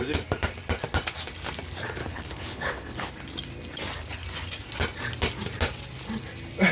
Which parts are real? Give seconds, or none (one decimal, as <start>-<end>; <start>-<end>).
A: 0.0-2.0; 3.1-6.7